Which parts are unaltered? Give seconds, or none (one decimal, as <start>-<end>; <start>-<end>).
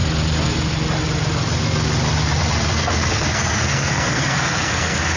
0.0-3.1